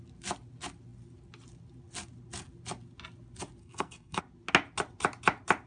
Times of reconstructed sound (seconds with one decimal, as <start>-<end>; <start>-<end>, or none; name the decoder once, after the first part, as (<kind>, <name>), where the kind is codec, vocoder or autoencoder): 3.6-4.2 (codec, SNAC)